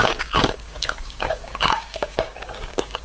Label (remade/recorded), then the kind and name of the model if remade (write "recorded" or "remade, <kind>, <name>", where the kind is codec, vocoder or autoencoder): remade, codec, DAC